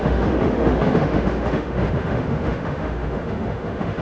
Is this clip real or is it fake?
fake